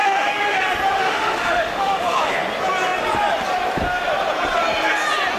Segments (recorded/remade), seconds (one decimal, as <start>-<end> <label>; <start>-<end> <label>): 0.0-0.6 remade; 0.6-1.0 recorded; 1.0-2.3 remade; 2.3-5.4 recorded